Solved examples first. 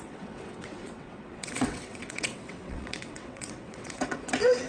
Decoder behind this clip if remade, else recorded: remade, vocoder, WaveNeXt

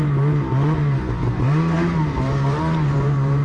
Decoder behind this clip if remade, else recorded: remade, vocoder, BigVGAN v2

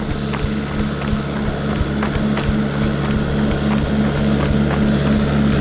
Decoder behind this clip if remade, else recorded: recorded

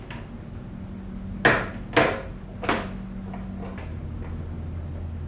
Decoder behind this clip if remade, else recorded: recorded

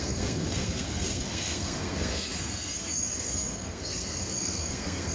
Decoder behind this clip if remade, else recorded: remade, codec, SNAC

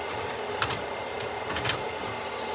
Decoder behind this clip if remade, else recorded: recorded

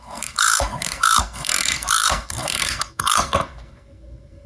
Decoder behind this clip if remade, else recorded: remade, codec, SNAC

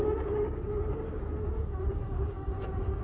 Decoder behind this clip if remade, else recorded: remade, codec, DAC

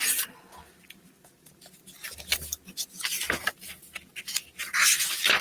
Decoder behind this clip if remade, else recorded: recorded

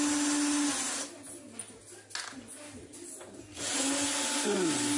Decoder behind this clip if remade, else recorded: recorded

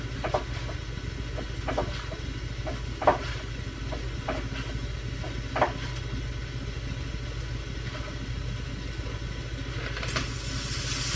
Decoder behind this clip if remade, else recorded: recorded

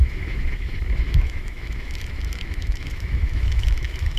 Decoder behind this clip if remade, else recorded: remade, autoencoder, DAC-VAE